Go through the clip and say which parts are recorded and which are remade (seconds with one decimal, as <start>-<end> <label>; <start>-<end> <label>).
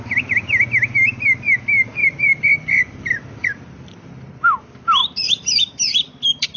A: 0.0-2.0 recorded; 2.0-4.4 remade; 4.4-5.0 recorded; 5.0-6.6 remade